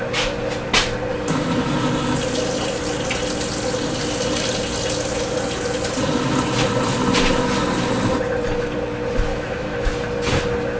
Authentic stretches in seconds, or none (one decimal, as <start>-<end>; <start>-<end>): 0.0-9.3; 9.9-10.8